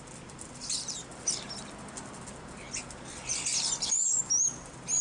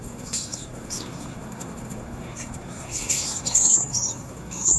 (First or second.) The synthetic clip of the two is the second